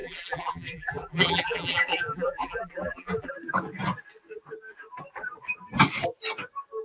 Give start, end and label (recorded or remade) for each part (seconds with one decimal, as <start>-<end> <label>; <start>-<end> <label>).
0.0-3.3 remade; 3.3-6.8 recorded